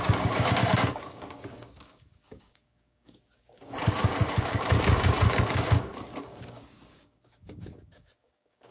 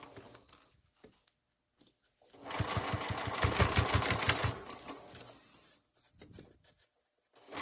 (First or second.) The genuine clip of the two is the second